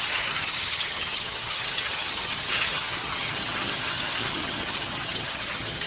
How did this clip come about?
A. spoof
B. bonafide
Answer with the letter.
A